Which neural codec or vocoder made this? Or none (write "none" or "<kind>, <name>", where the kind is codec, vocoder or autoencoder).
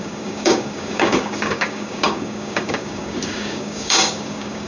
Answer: codec, DAC